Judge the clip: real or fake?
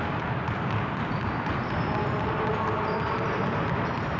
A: real